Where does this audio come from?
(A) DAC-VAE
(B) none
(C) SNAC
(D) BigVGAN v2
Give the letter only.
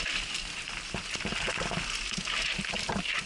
B